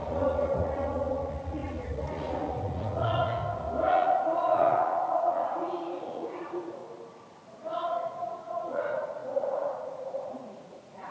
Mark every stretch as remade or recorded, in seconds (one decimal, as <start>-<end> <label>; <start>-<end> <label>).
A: 0.0-3.4 remade; 3.4-3.9 recorded; 3.9-6.8 remade; 6.8-7.5 recorded; 7.5-11.1 remade